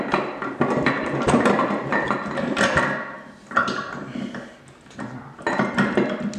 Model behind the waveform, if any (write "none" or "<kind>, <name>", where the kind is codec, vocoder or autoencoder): none